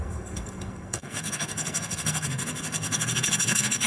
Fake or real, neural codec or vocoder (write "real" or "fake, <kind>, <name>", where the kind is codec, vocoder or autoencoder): fake, codec, SNAC